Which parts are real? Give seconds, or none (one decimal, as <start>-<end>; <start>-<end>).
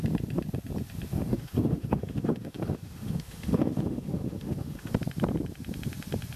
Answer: 0.0-1.1; 4.9-6.4